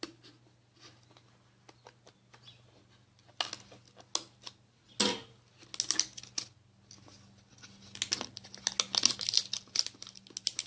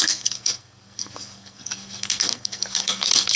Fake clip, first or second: second